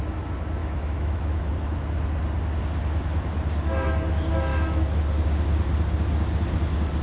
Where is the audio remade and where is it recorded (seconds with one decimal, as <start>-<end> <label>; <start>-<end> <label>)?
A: 0.0-0.6 recorded; 0.6-1.5 remade; 1.5-4.5 recorded; 4.5-5.0 remade; 5.0-7.0 recorded